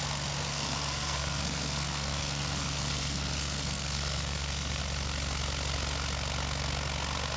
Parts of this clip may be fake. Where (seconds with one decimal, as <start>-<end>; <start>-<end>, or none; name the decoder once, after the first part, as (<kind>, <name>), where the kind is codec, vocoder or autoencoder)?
0.5-4.8 (codec, SNAC)